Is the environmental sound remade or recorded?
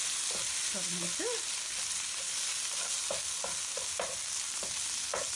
recorded